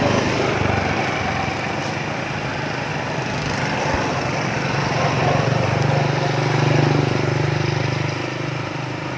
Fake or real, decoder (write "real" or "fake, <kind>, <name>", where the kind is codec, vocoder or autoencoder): real